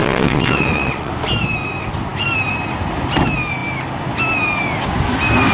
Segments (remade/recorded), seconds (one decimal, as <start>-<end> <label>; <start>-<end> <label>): 0.0-1.1 remade; 1.1-5.5 recorded